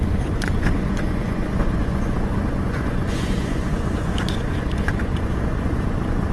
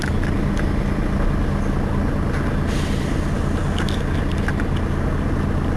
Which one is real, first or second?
second